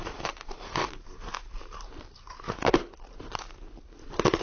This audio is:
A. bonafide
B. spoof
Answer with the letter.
B